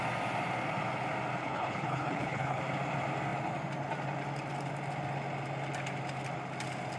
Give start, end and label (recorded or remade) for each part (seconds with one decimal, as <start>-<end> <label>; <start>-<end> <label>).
0.0-1.4 recorded; 1.4-2.6 remade; 2.6-7.0 recorded